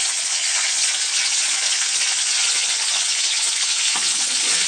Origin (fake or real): fake